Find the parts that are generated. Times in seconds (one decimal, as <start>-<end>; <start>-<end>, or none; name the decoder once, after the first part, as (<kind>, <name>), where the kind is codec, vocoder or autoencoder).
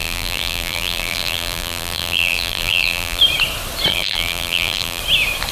0.0-3.2 (vocoder, BigVGAN v2); 3.9-5.0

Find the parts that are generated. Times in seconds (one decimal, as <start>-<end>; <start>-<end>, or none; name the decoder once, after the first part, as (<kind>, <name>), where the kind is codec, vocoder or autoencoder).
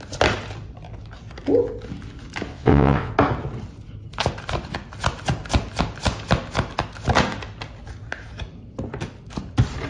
2.5-3.1 (vocoder, WaveNeXt)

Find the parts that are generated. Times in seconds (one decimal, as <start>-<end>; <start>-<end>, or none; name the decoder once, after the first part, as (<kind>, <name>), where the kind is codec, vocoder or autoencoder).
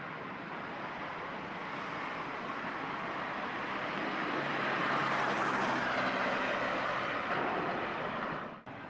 0.0-1.6 (vocoder, BigVGAN v2); 2.9-8.9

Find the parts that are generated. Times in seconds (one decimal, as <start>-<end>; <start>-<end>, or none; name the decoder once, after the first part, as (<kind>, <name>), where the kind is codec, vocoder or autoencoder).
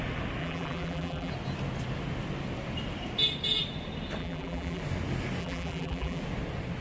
0.4-1.3 (vocoder, BigVGAN v2); 4.2-4.8; 5.4-6.2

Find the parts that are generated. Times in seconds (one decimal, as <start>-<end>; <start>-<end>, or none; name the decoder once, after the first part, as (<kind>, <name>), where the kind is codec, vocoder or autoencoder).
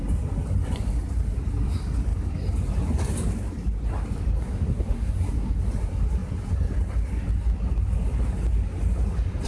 4.4-5.6 (codec, SNAC)